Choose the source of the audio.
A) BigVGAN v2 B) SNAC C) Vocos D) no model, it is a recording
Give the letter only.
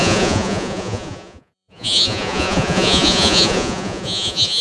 C